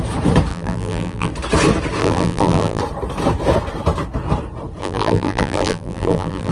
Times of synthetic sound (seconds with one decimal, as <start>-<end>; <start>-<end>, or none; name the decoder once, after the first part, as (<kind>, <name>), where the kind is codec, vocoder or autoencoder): 0.5-1.3 (vocoder, BigVGAN v2); 2.0-2.8; 4.8-6.5